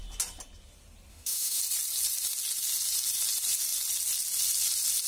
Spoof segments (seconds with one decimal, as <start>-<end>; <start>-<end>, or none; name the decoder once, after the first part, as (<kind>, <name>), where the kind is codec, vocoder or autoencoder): 1.1-1.6 (autoencoder, DAC-VAE)